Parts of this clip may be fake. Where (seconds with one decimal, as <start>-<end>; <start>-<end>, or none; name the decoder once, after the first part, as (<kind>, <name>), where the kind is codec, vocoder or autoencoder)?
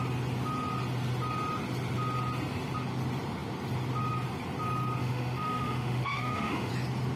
5.0-6.7 (autoencoder, DAC-VAE)